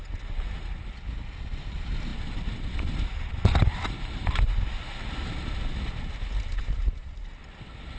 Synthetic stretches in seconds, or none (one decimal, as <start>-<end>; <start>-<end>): 6.5-7.3